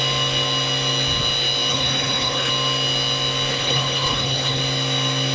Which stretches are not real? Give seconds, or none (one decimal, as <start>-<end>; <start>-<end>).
1.7-2.5; 3.5-4.6

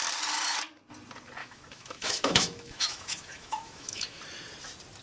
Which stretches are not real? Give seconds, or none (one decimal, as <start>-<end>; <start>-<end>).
1.4-4.2

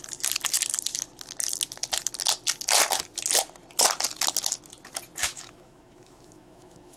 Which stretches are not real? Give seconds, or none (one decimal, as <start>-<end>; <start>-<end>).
5.2-7.0

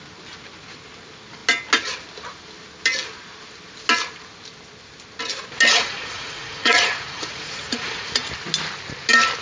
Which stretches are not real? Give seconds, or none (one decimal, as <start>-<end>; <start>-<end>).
5.7-8.3

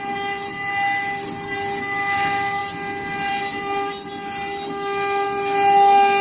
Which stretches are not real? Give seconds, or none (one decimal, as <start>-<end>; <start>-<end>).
none

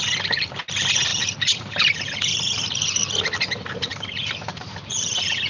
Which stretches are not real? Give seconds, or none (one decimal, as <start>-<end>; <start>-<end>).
1.1-3.0; 3.9-5.1

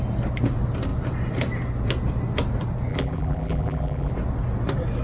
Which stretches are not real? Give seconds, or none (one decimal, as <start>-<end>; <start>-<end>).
2.9-4.1